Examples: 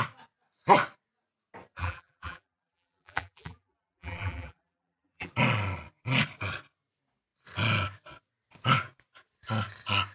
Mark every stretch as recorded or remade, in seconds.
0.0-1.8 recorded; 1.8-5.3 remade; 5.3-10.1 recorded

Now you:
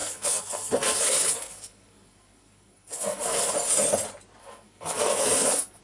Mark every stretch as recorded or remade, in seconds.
0.0-3.5 remade; 3.5-4.4 recorded; 4.4-5.8 remade

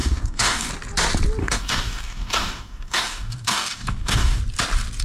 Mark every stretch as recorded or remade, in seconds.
0.0-0.7 remade; 0.7-1.4 recorded; 1.4-4.4 remade; 4.4-5.0 recorded

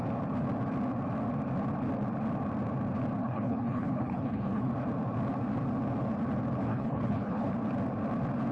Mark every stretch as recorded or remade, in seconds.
0.0-3.2 recorded; 3.2-4.7 remade; 4.7-6.7 recorded; 6.7-7.5 remade; 7.5-8.5 recorded